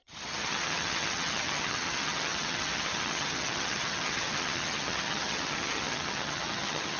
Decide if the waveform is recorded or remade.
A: remade